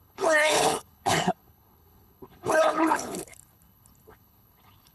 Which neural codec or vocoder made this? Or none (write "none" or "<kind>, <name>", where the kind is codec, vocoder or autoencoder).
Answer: codec, HILCodec